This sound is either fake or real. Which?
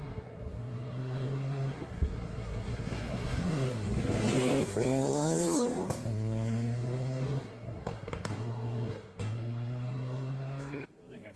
fake